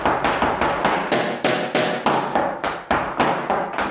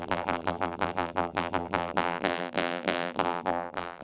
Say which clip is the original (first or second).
first